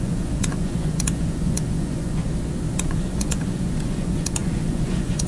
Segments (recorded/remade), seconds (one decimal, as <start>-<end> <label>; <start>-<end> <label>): 0.0-2.2 remade; 2.2-2.7 recorded; 2.7-5.3 remade